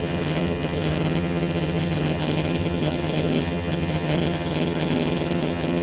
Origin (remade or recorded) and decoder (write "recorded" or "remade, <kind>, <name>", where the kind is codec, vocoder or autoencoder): remade, vocoder, HiFi-GAN